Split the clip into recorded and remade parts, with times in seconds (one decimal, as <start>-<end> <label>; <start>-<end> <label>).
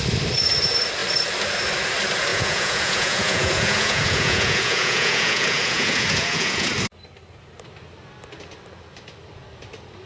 0.0-2.3 recorded; 2.3-6.7 remade; 6.7-10.1 recorded